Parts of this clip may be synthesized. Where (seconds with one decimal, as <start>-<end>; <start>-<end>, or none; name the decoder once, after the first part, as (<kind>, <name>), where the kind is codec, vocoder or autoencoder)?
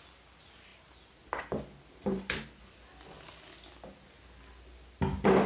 none